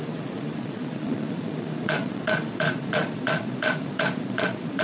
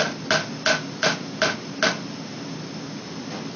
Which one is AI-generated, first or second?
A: first